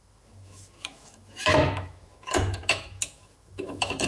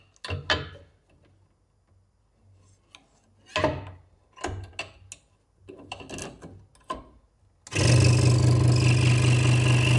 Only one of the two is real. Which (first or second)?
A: second